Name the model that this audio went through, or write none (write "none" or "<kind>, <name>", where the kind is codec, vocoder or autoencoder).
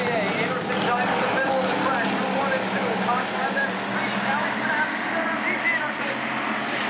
none